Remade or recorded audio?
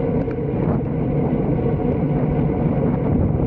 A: recorded